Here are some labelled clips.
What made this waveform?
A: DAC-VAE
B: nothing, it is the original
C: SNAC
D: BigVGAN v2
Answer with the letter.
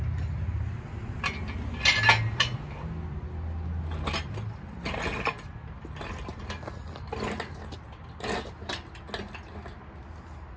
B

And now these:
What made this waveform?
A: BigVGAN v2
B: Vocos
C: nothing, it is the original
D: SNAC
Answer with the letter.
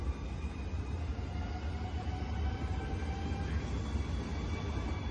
C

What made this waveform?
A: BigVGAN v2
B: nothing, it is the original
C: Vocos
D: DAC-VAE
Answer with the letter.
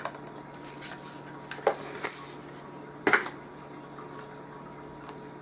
B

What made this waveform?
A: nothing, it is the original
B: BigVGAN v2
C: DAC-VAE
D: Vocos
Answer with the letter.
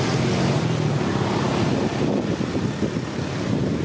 A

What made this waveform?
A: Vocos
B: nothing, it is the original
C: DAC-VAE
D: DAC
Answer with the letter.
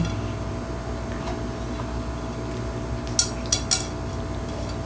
B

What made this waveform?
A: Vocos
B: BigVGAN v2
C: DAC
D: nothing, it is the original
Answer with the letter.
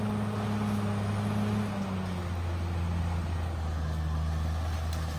D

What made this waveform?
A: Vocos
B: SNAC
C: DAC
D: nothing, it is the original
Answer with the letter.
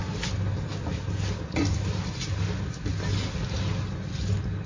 D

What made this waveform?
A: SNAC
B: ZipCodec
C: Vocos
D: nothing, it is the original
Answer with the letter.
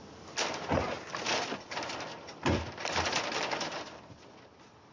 D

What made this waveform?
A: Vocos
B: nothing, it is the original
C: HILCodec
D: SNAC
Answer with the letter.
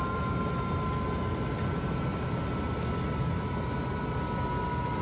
B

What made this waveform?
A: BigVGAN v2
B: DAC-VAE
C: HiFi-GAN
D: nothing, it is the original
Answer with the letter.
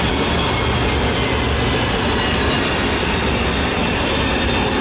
D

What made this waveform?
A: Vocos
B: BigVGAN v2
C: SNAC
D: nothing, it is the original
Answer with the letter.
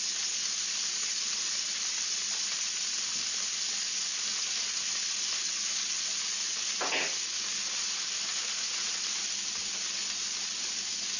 D